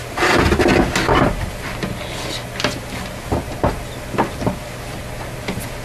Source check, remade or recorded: recorded